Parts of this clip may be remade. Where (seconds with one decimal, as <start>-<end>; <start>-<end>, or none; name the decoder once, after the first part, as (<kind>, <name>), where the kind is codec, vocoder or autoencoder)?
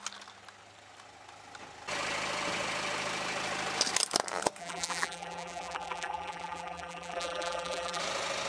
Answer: 4.6-8.0 (vocoder, BigVGAN v2)